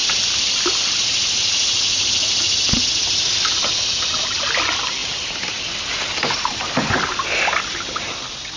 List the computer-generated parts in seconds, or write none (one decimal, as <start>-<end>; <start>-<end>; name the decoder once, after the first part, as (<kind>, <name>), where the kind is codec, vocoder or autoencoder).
none